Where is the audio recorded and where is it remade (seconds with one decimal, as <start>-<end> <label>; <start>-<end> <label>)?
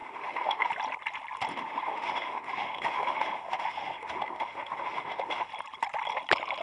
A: 0.0-0.7 remade; 0.7-1.5 recorded; 1.5-5.5 remade; 5.5-6.6 recorded